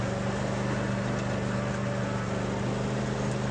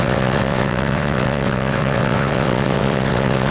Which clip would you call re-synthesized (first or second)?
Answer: second